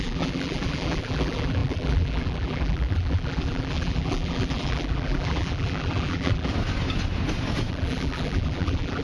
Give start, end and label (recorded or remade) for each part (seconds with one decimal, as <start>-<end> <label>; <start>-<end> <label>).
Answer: 0.0-6.5 remade; 6.5-7.7 recorded; 7.7-9.0 remade